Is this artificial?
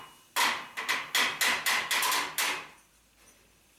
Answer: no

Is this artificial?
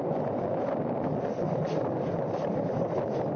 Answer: no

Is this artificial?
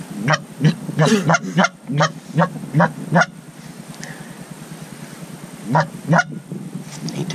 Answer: no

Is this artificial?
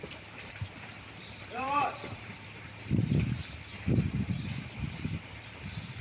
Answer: yes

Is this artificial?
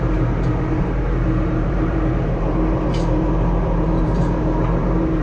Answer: yes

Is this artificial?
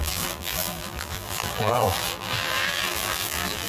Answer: yes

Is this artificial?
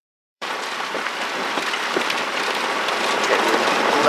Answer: yes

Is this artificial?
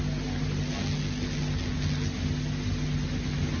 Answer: no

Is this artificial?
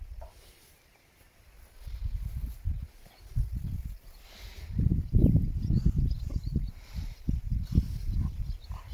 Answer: no